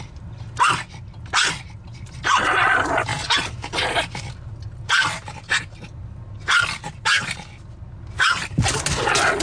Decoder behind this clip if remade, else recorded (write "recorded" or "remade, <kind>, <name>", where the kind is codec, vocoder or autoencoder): recorded